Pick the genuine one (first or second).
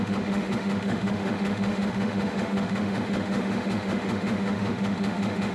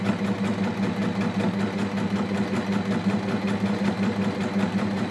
second